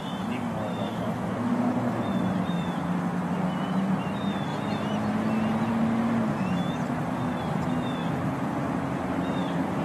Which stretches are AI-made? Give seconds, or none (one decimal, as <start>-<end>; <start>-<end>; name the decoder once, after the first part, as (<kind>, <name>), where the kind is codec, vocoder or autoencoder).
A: 0.7-2.0 (autoencoder, DAC-VAE)